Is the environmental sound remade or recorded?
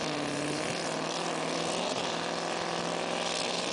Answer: recorded